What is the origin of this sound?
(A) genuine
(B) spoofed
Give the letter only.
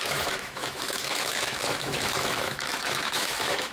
B